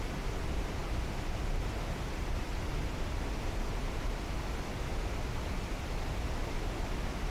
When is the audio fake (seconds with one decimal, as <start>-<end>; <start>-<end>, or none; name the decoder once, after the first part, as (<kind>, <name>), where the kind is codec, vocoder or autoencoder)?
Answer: none